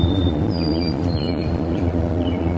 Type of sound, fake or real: fake